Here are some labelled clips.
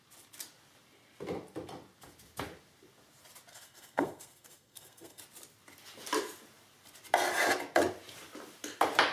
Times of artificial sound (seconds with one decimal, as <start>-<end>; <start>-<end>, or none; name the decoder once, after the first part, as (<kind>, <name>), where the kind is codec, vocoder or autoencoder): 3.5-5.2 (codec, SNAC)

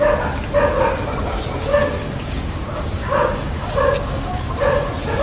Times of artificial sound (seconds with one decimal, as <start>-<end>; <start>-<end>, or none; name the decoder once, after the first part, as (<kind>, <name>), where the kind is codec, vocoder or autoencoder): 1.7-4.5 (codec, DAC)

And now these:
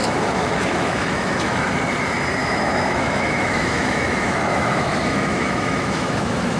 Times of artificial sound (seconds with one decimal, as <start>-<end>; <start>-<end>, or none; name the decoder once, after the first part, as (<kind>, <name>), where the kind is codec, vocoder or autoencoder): 0.0-1.7 (autoencoder, DAC-VAE); 2.4-6.6